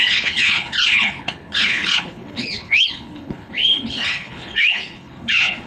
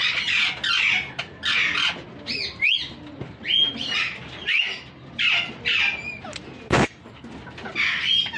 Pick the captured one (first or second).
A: second